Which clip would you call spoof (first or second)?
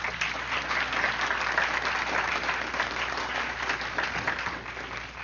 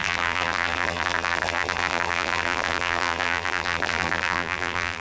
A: second